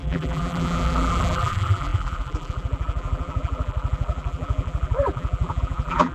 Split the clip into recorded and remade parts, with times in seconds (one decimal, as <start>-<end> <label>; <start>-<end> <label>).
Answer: 0.0-6.1 remade